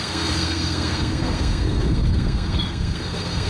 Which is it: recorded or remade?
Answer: remade